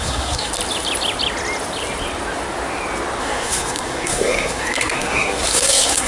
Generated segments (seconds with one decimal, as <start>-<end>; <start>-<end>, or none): 0.0-0.5; 3.2-6.1